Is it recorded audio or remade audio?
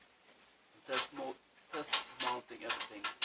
recorded